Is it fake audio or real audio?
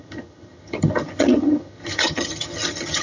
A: fake